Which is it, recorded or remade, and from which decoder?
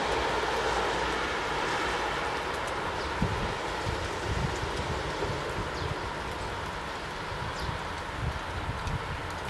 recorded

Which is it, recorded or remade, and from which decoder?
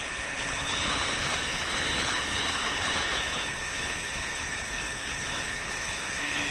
remade, codec, HILCodec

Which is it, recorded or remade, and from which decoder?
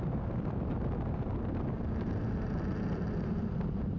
recorded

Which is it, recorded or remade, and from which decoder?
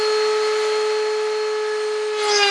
recorded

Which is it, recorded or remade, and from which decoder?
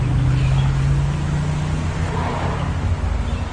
recorded